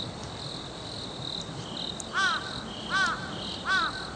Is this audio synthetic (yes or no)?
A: no